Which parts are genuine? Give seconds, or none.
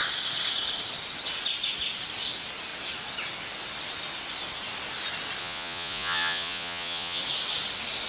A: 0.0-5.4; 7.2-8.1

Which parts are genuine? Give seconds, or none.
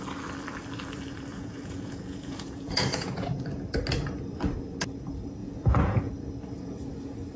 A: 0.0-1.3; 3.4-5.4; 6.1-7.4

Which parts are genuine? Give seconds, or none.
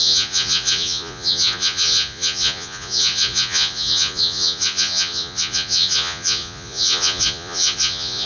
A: none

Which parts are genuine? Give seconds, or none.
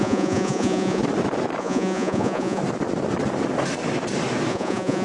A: 1.0-1.6; 2.6-4.5